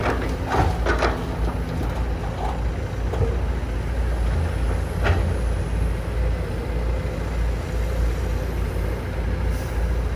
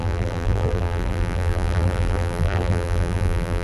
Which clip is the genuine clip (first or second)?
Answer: first